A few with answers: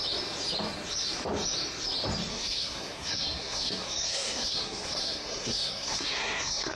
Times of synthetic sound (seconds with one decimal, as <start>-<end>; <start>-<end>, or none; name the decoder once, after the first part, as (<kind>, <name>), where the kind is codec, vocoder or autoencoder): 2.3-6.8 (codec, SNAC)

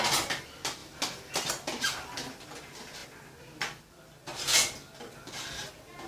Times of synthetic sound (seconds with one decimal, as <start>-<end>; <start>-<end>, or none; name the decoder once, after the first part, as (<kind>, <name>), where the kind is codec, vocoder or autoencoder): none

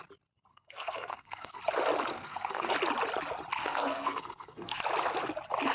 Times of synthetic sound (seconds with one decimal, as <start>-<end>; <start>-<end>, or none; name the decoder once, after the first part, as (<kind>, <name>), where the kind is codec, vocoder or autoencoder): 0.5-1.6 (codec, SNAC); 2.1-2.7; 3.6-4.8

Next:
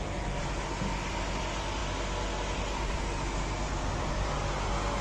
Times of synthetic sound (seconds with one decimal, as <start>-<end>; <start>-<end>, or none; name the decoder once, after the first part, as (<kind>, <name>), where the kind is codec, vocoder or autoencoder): none